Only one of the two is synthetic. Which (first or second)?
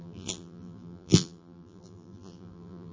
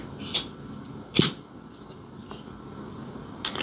first